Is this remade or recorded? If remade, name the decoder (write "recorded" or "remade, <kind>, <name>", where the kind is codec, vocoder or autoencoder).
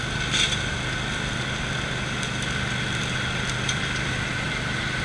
recorded